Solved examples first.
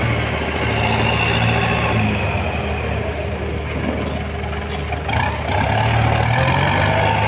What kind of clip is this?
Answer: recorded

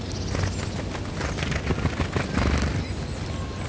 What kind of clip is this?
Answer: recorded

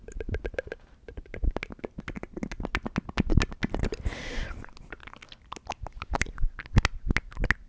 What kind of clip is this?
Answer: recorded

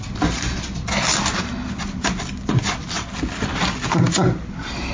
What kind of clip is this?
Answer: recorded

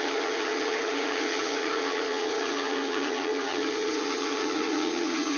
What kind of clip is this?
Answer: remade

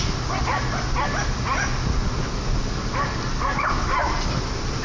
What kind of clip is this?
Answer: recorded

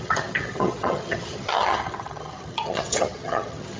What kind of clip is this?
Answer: remade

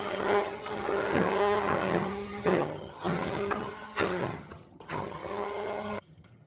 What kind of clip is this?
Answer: remade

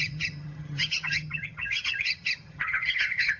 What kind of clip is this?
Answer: remade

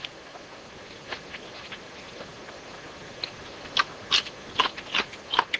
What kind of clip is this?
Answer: recorded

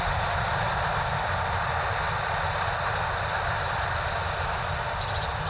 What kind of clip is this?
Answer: recorded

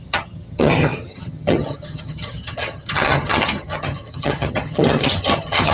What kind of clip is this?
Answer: remade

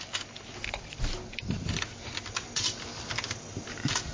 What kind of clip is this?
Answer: recorded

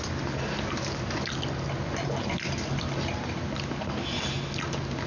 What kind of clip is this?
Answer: recorded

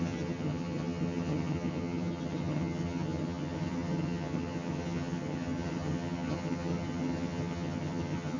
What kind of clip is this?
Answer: remade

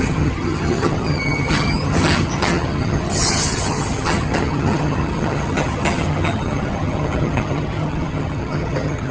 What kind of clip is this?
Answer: remade